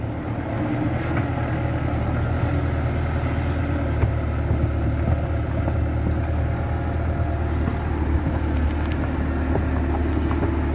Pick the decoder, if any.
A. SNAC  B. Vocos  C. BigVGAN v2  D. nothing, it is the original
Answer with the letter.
D